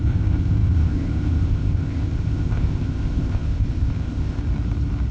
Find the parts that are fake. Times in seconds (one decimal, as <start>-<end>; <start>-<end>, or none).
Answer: 0.0-4.4